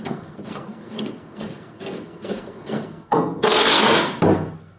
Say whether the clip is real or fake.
fake